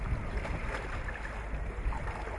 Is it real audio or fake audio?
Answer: real